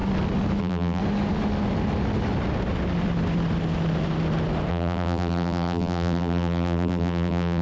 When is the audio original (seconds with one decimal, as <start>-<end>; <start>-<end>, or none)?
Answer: 0.0-0.6; 1.0-4.7

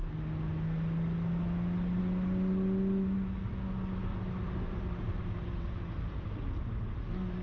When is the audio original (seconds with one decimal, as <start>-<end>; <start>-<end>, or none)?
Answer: 0.0-4.1; 7.0-7.4

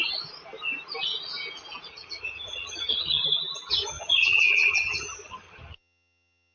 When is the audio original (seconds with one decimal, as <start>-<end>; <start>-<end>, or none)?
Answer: 0.0-1.9; 3.2-3.7

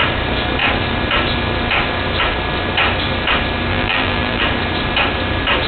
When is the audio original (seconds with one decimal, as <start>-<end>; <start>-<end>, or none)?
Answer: 0.0-3.7; 4.4-5.7

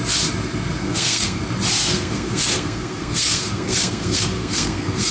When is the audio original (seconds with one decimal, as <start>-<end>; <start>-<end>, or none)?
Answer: 0.0-0.8; 1.4-1.8

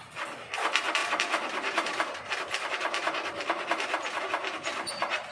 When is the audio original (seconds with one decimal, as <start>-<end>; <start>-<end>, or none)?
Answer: 0.0-1.0; 4.2-5.3

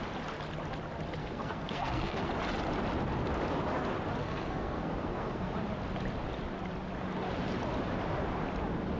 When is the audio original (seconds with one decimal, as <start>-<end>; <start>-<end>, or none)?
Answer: 0.0-1.2; 2.3-4.2; 5.5-9.0